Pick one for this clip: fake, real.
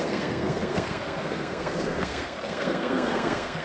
fake